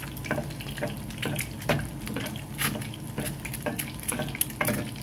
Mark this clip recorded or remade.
recorded